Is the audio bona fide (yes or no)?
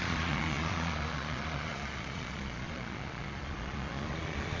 no